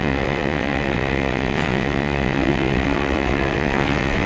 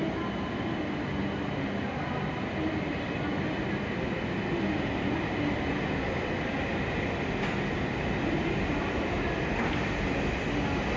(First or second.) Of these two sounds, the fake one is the first